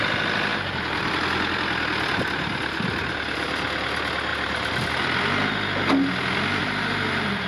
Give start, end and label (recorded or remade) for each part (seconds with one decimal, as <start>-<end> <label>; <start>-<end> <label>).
0.0-0.5 recorded; 0.5-1.1 remade; 1.1-4.3 recorded; 4.3-4.9 remade; 4.9-6.6 recorded; 6.6-7.5 remade